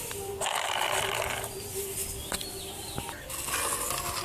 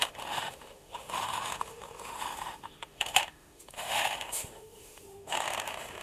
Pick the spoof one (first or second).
second